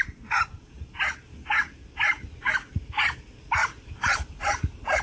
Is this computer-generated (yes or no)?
no